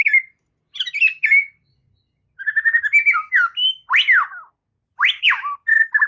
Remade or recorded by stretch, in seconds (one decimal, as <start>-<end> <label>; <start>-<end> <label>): 0.0-6.1 recorded